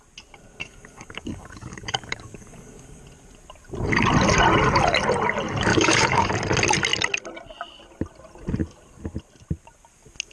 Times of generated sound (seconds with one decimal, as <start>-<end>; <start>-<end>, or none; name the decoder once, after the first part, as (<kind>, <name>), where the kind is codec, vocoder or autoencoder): 0.6-3.0 (codec, DAC); 5.7-6.3